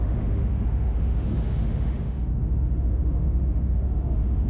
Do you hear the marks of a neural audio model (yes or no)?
yes